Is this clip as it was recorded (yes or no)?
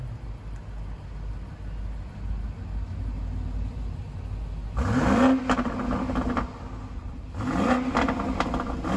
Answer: yes